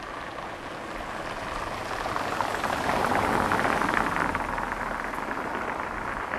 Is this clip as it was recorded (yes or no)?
yes